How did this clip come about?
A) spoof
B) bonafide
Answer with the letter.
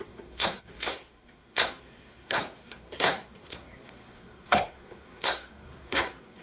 A